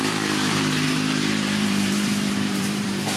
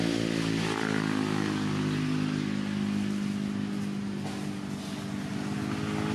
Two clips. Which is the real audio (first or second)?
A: second